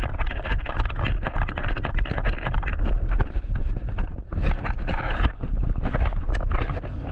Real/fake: real